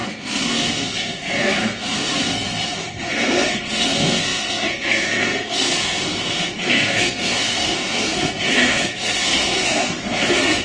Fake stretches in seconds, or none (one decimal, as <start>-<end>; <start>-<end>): 0.0-10.6